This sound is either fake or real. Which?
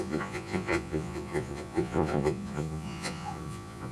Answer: fake